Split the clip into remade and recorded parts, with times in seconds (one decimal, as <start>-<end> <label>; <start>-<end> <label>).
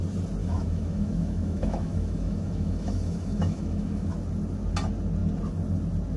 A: 0.0-0.4 recorded; 0.4-4.1 remade; 4.1-6.2 recorded